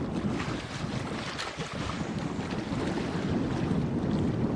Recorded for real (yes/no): yes